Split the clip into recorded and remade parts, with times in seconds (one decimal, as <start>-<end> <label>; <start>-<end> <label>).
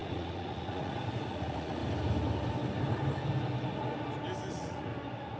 0.0-1.8 remade; 1.8-4.5 recorded; 4.5-4.9 remade; 4.9-5.4 recorded